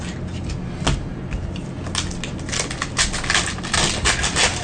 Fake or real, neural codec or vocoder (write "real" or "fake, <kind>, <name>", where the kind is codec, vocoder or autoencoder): real